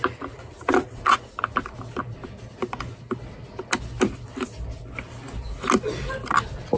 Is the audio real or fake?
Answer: real